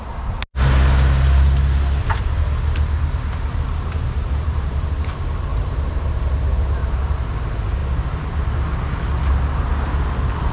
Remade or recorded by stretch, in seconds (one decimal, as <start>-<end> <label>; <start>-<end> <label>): 0.0-5.5 recorded; 5.5-6.1 remade; 6.1-6.8 recorded; 6.8-7.3 remade; 7.3-10.5 recorded